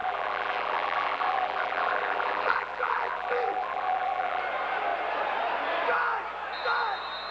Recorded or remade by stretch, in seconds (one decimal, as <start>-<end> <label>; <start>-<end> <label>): 0.0-4.4 remade; 4.4-7.3 recorded